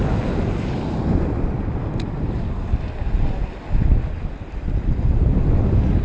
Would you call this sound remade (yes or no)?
no